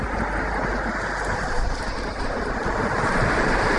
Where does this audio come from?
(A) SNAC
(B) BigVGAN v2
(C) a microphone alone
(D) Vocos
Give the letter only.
C